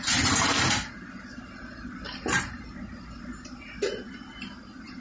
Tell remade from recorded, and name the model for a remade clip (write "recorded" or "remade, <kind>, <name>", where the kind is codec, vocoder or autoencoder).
recorded